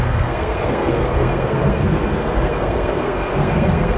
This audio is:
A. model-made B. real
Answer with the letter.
A